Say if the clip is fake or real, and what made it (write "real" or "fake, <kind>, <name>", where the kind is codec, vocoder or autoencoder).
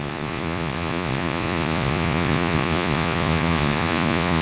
fake, vocoder, Vocos